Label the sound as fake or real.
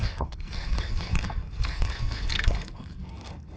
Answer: fake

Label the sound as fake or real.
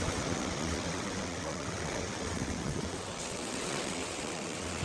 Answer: fake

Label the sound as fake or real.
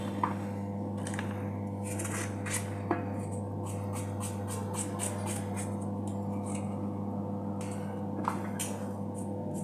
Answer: real